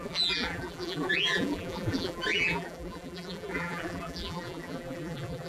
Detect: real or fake fake